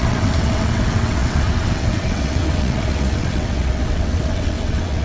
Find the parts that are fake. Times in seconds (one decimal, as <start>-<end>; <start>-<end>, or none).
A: 0.0-5.0